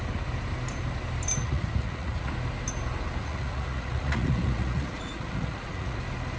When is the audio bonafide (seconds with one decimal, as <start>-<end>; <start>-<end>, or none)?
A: 0.0-1.4; 2.3-3.2; 6.0-6.4

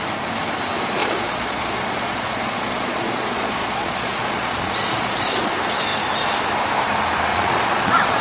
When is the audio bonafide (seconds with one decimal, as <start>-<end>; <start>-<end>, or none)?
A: 0.0-1.0; 5.5-7.3

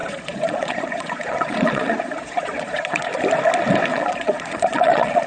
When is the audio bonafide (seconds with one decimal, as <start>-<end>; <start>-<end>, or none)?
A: 3.2-3.9

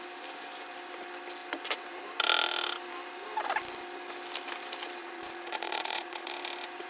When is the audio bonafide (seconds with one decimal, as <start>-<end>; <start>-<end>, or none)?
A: 0.0-5.0; 6.3-6.9

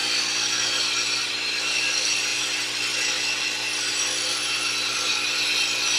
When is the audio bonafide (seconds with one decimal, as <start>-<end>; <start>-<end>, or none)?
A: 0.0-6.0

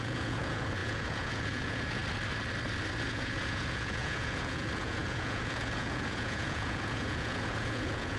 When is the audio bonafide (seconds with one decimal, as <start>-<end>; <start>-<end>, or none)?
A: 2.0-3.0

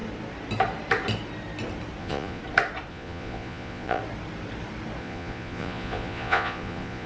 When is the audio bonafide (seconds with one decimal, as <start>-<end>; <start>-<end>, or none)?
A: 0.0-2.0; 2.4-2.9; 4.0-5.0